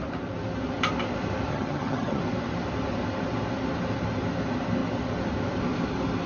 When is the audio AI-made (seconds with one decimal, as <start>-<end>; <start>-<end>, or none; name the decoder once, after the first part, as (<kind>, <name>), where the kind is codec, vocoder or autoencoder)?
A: 1.5-2.2 (vocoder, HiFi-GAN)